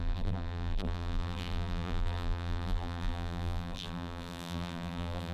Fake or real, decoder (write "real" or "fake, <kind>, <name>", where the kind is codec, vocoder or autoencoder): fake, vocoder, BigVGAN v2